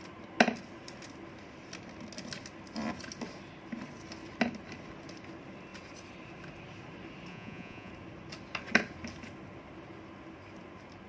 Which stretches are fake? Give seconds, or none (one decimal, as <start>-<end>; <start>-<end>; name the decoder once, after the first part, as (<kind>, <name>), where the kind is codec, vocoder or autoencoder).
7.3-7.9 (vocoder, Vocos)

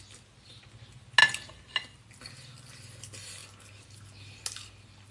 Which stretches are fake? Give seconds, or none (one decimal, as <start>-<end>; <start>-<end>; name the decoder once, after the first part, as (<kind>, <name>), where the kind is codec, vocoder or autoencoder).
none

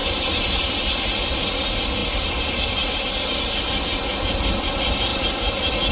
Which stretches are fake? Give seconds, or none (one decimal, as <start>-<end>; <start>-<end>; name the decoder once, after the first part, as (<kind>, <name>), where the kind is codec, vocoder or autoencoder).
0.0-0.8 (vocoder, BigVGAN v2); 2.0-3.2; 5.1-5.9